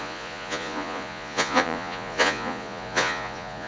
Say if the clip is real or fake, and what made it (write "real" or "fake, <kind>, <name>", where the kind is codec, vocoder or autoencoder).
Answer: fake, vocoder, Vocos